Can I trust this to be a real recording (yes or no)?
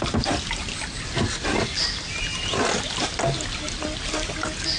yes